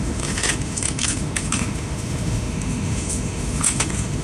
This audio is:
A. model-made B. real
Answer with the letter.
A